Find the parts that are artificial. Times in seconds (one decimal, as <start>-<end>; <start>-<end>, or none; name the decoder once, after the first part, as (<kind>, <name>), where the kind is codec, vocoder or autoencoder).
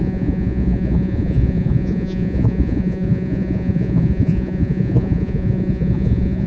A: 0.0-6.5 (vocoder, Vocos)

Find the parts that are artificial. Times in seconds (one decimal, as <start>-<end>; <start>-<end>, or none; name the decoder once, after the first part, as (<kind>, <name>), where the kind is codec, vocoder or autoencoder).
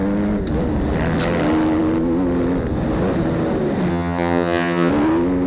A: 3.9-4.9 (vocoder, HiFi-GAN)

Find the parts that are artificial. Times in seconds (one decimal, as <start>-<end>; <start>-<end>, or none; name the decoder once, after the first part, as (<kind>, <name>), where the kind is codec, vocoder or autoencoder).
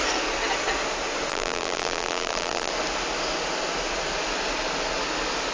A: 1.3-2.7 (vocoder, BigVGAN v2)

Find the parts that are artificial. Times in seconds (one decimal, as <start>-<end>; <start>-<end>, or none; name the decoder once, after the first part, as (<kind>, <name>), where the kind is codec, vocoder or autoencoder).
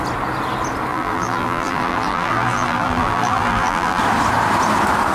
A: 0.9-4.0 (vocoder, BigVGAN v2)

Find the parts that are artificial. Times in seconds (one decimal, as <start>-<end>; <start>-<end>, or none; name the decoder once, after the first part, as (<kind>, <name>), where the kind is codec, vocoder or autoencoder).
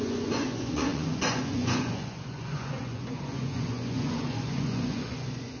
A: 0.0-5.6 (vocoder, Vocos)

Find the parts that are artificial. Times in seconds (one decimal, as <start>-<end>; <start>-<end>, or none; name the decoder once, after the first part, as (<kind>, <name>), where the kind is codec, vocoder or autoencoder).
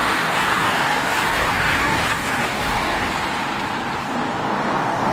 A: 0.0-3.1 (codec, DAC); 4.0-5.1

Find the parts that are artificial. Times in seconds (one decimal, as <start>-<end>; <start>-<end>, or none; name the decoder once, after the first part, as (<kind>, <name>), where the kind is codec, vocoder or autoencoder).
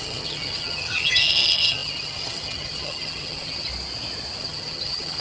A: 0.0-3.7 (vocoder, HiFi-GAN); 4.4-5.2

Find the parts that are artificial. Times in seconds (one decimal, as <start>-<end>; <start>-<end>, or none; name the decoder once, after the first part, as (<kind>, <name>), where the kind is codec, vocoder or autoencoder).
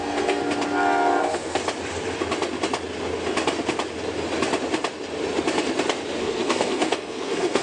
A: 0.0-0.4 (codec, SNAC); 1.2-1.6; 6.2-7.6